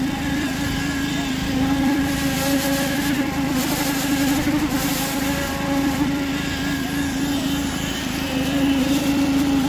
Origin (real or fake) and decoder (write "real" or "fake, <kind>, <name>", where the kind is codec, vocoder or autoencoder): fake, vocoder, BigVGAN v2